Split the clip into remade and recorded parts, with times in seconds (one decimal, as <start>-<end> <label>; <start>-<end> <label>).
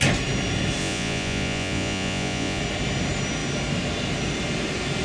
0.0-0.8 recorded; 0.8-2.6 remade; 2.6-5.0 recorded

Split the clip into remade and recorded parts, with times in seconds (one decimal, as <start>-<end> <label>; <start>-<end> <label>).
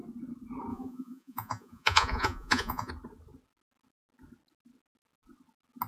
0.0-0.7 recorded; 0.7-2.9 remade; 2.9-5.9 recorded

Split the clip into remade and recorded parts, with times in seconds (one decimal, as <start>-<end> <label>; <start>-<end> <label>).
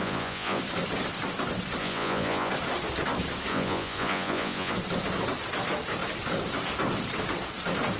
0.0-0.6 remade; 0.6-1.8 recorded; 1.8-2.5 remade; 2.5-3.5 recorded; 3.5-4.7 remade; 4.7-8.0 recorded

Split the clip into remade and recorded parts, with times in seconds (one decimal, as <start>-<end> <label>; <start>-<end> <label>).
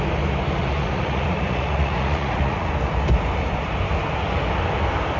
0.0-0.6 recorded; 0.6-2.7 remade; 2.7-5.2 recorded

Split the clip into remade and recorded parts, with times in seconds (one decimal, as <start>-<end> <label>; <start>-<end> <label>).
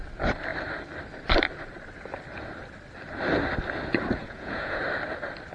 0.0-4.2 recorded; 4.2-4.8 remade; 4.8-5.5 recorded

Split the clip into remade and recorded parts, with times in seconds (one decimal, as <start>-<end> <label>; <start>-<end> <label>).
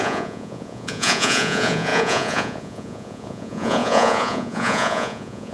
0.0-5.5 remade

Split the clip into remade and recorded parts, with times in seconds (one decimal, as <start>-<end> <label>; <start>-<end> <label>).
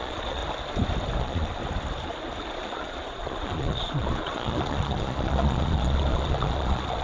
0.0-0.4 remade; 0.4-1.2 recorded; 1.2-1.6 remade; 1.6-2.5 recorded; 2.5-7.0 remade